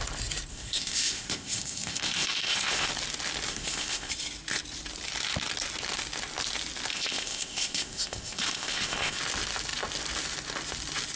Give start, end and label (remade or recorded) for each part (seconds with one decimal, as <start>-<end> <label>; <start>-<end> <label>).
0.0-0.5 recorded; 0.5-2.9 remade; 2.9-3.5 recorded; 3.5-4.1 remade; 4.1-6.9 recorded; 6.9-9.2 remade; 9.2-11.2 recorded